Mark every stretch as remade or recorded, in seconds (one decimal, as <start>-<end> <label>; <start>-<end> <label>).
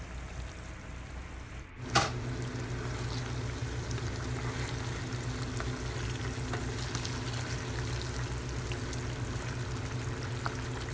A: 0.0-10.9 recorded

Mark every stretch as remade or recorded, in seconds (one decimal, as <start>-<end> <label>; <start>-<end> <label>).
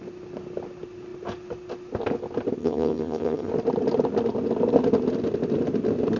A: 0.0-2.6 recorded; 2.6-3.5 remade; 3.5-6.2 recorded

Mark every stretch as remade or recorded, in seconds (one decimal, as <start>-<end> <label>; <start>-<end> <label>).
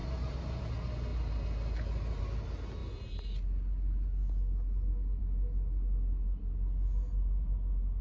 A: 0.0-8.0 recorded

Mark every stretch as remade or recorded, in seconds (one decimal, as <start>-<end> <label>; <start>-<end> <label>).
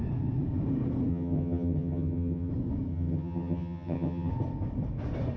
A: 0.0-1.1 recorded; 1.1-2.5 remade; 2.5-2.9 recorded; 2.9-4.3 remade; 4.3-5.4 recorded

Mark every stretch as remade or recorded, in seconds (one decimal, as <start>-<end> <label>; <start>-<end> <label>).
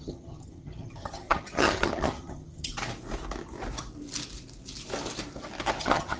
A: 0.0-2.7 remade; 2.7-5.8 recorded; 5.8-6.2 remade